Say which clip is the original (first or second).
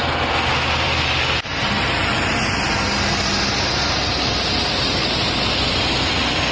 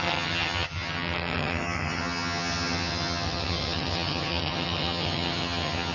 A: first